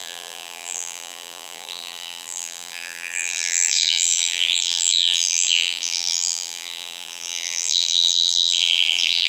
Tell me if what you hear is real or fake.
fake